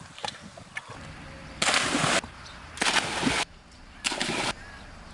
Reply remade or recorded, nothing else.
recorded